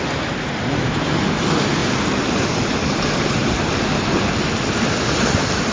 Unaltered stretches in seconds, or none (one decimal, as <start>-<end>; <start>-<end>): 0.0-5.7